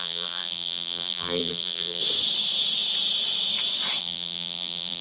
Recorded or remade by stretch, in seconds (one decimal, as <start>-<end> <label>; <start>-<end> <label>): 0.0-2.0 remade; 2.0-4.0 recorded; 4.0-5.0 remade